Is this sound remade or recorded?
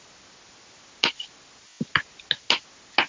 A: recorded